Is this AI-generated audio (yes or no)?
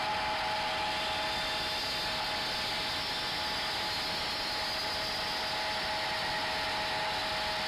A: no